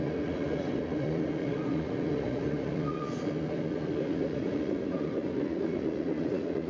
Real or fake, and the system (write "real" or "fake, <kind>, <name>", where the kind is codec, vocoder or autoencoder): fake, vocoder, Vocos